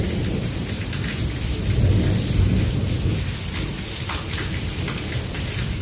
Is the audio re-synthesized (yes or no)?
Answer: no